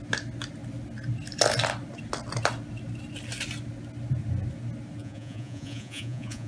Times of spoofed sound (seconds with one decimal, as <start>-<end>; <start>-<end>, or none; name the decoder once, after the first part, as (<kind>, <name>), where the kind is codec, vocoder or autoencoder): 5.0-6.5 (vocoder, Vocos)